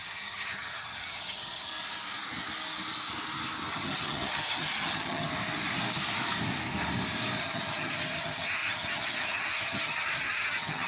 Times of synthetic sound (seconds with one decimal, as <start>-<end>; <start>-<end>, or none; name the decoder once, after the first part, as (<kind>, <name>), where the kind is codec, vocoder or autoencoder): 0.0-1.7 (vocoder, HiFi-GAN); 3.7-5.3; 7.4-10.9